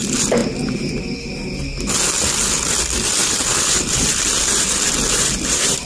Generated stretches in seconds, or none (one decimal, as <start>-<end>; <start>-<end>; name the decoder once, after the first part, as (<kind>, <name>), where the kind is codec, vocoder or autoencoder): 3.2-5.9 (vocoder, BigVGAN v2)